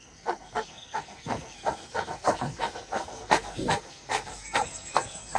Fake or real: fake